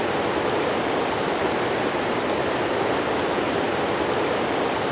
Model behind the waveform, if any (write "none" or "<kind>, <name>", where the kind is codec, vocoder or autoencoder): none